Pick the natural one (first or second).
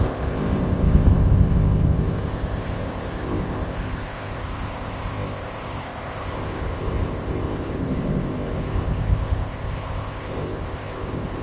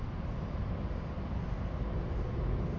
second